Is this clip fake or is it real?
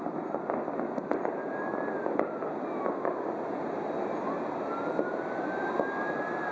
real